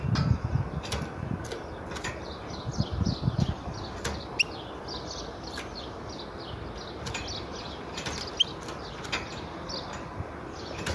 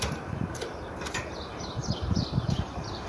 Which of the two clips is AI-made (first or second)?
second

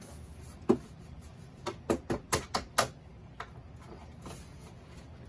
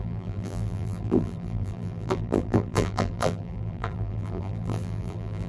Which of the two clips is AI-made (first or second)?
second